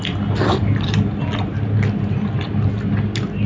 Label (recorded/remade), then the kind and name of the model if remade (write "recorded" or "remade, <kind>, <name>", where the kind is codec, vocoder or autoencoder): recorded